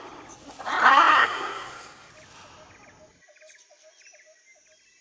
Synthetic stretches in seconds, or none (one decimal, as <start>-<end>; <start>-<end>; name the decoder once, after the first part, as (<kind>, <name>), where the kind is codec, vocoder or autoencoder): 1.1-2.1 (codec, SNAC)